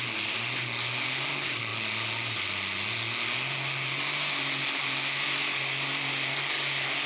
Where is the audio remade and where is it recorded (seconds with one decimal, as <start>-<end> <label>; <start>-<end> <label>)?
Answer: 0.0-7.1 recorded